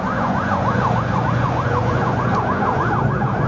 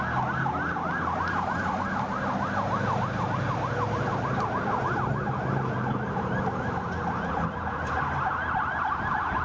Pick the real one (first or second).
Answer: second